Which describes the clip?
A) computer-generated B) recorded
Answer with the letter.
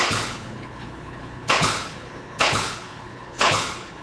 A